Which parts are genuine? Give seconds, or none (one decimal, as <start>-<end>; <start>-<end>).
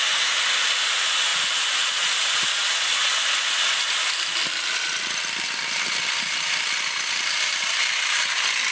0.0-8.7